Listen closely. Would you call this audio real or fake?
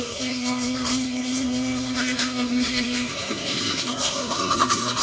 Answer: fake